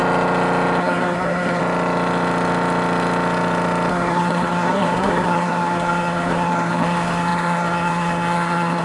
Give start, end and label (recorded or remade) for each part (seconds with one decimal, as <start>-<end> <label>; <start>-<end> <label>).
0.0-0.8 recorded; 0.8-1.6 remade; 1.6-3.9 recorded; 3.9-8.8 remade